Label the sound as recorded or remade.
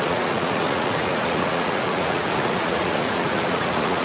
remade